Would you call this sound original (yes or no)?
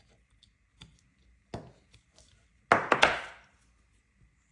yes